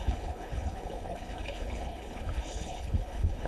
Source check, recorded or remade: remade